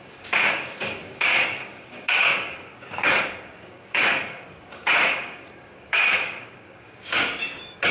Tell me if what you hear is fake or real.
fake